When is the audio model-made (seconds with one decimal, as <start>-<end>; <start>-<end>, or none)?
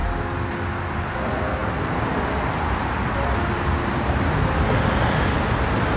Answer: none